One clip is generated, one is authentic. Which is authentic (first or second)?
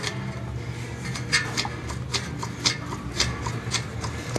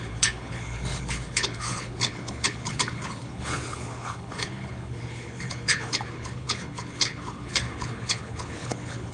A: first